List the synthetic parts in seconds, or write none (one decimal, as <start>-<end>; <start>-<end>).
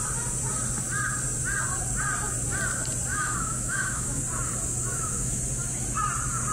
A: 3.1-4.2; 4.9-5.4